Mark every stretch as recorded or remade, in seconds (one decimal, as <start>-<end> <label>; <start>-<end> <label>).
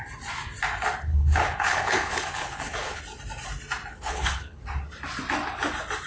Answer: 0.0-1.1 recorded; 1.1-3.0 remade; 3.0-3.9 recorded; 3.9-4.6 remade; 4.6-6.1 recorded